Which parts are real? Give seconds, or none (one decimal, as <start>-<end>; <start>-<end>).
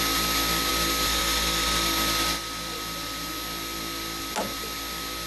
0.0-5.3